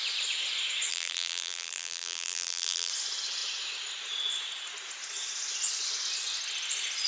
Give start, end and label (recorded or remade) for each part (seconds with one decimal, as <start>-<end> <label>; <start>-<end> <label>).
0.0-0.9 recorded; 0.9-2.9 remade; 2.9-7.1 recorded